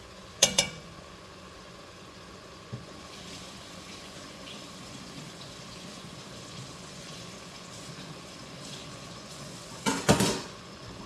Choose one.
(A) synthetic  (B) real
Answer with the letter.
A